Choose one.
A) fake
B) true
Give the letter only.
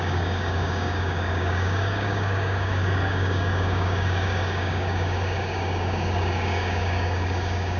A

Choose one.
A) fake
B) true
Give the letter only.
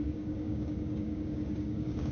A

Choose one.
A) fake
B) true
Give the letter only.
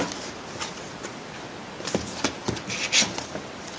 B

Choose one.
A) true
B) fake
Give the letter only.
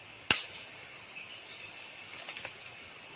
B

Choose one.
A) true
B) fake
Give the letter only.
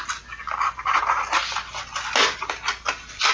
A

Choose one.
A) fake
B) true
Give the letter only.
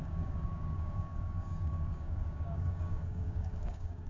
A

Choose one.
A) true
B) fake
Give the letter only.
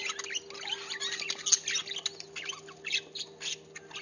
A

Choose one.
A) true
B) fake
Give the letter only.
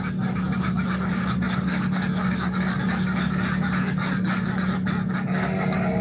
B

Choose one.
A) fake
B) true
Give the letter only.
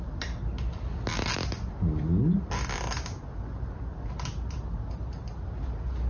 B